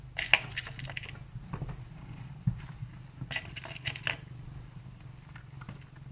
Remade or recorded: recorded